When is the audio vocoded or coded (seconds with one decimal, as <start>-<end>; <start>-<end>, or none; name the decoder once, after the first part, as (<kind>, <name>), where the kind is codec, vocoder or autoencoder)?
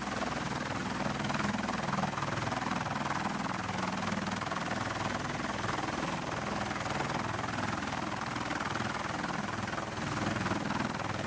none